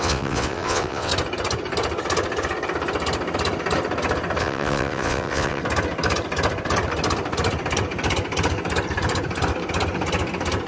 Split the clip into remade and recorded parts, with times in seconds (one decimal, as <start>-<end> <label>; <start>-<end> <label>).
0.0-1.1 remade; 1.1-4.4 recorded; 4.4-5.6 remade; 5.6-10.7 recorded